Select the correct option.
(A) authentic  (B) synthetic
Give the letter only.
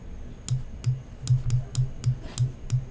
A